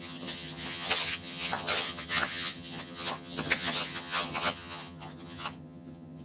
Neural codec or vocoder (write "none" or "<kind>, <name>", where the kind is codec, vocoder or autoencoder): vocoder, HiFi-GAN